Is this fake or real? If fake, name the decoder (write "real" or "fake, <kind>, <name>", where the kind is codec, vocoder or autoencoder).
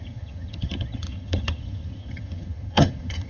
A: fake, vocoder, HiFi-GAN